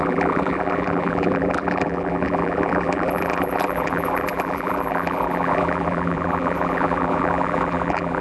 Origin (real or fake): fake